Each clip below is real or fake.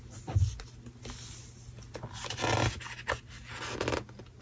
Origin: real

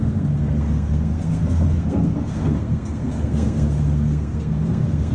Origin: fake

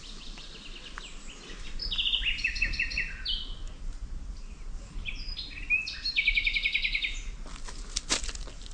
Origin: real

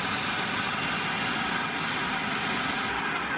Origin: real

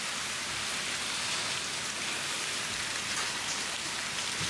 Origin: real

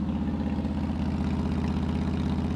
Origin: real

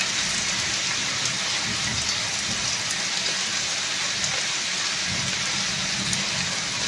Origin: real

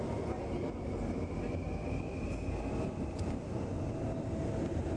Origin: real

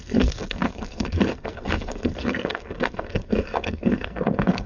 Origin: fake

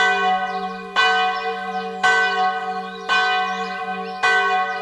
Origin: real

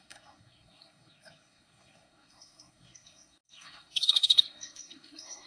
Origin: fake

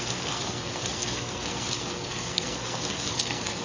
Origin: fake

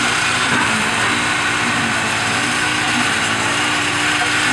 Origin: real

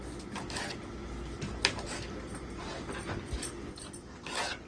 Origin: real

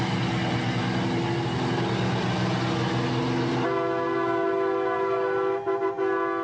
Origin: real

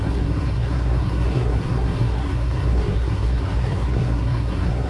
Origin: fake